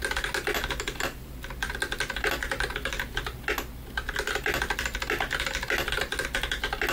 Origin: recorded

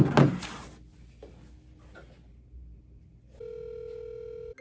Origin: recorded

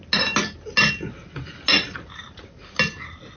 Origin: recorded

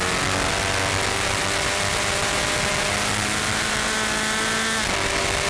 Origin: recorded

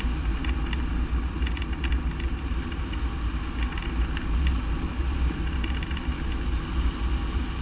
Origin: recorded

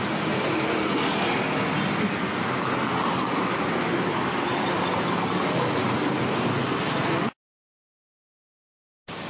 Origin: recorded